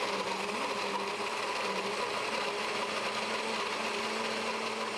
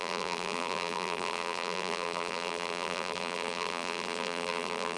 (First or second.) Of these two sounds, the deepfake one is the second